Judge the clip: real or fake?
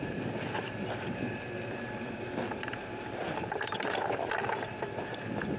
fake